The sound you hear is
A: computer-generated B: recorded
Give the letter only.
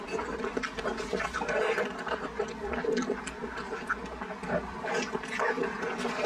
B